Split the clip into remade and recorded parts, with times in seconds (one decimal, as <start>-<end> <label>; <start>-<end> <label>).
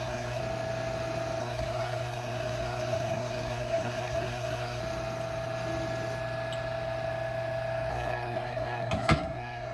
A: 0.0-0.4 remade; 0.4-1.4 recorded; 1.4-4.8 remade; 4.8-7.9 recorded; 7.9-9.7 remade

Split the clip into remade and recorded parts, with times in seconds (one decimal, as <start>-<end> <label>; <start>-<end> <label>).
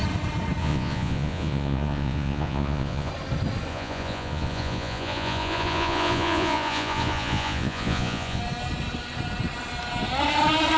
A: 0.0-0.6 recorded; 0.6-3.1 remade; 3.1-3.7 recorded; 3.7-8.4 remade; 8.4-10.8 recorded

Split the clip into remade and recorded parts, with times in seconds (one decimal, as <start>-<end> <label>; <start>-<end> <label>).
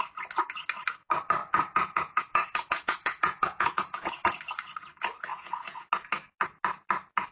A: 0.0-1.4 recorded; 1.4-4.4 remade; 4.4-5.3 recorded; 5.3-5.9 remade; 5.9-7.3 recorded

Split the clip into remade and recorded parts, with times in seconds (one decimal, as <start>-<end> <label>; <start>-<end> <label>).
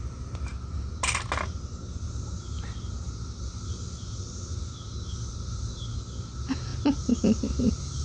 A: 0.0-8.0 recorded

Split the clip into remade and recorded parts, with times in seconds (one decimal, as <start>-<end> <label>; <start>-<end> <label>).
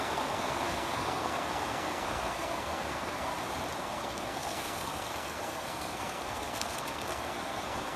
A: 0.0-3.3 remade; 3.3-3.8 recorded; 3.8-8.0 remade